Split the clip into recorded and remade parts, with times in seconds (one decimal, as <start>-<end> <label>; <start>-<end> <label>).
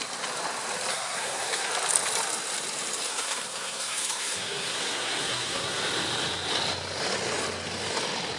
0.0-0.9 recorded; 0.9-1.7 remade; 1.7-3.1 recorded; 3.1-5.8 remade; 5.8-8.4 recorded